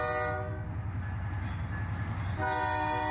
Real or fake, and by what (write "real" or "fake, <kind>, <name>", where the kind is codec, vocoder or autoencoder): real